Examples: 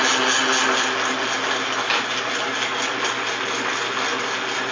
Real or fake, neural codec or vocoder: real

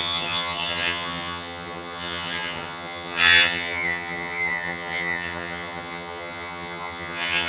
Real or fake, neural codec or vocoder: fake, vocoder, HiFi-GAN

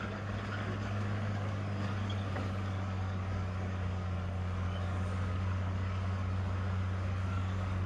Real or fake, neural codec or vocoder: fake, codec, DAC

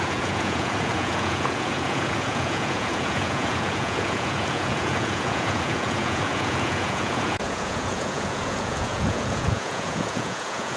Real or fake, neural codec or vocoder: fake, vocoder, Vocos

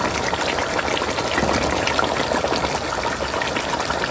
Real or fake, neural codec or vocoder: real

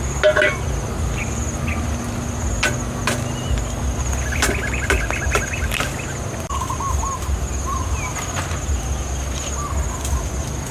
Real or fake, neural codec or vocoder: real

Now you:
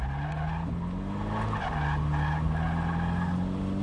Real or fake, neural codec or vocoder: real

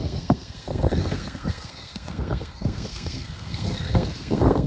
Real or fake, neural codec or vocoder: fake, codec, SNAC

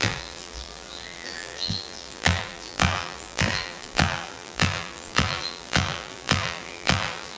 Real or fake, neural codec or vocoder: fake, vocoder, BigVGAN v2